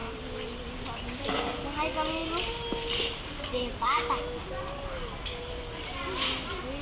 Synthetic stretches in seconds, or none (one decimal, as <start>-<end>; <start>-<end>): 0.0-0.6